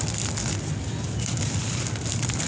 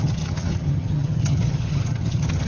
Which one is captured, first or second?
first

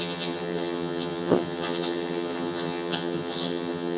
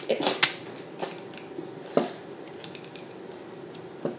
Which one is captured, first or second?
second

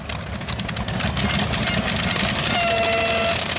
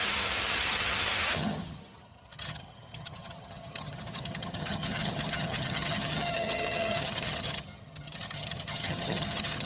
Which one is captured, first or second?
first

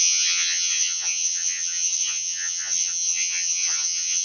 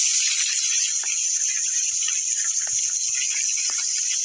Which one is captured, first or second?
second